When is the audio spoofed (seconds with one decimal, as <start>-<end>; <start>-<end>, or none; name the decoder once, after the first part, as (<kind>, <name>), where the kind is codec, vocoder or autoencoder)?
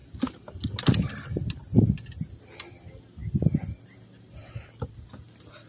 none